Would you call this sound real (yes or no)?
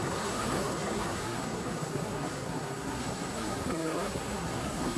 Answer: no